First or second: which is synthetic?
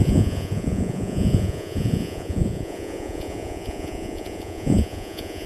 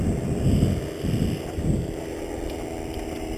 first